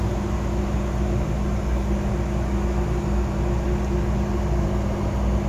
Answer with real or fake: real